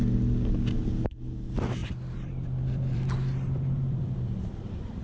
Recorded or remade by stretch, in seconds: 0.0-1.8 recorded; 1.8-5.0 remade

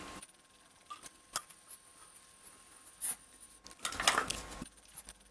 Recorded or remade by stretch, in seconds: 0.0-5.3 recorded

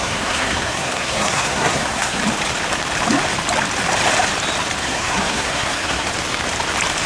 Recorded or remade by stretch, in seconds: 0.0-2.2 remade; 2.2-4.8 recorded; 4.8-6.1 remade; 6.1-7.1 recorded

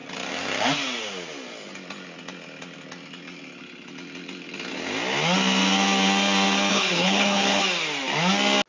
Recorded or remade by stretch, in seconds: 0.0-6.7 recorded; 6.7-7.6 remade; 7.6-8.7 recorded

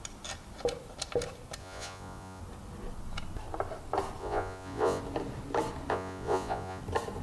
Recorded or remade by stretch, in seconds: 0.0-1.6 recorded; 1.6-2.4 remade; 2.4-4.2 recorded; 4.2-5.0 remade; 5.0-5.9 recorded; 5.9-6.8 remade; 6.8-7.2 recorded

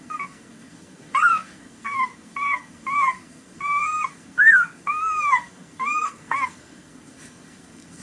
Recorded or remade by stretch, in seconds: 0.0-8.0 remade

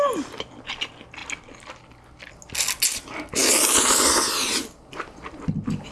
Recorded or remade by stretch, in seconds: 0.0-5.9 recorded